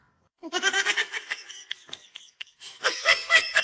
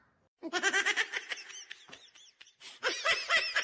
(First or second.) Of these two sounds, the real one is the second